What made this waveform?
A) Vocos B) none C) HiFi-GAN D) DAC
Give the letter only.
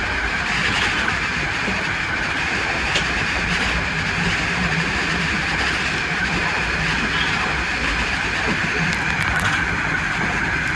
B